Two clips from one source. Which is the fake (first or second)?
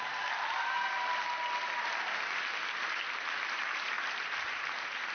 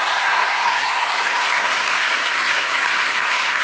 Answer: second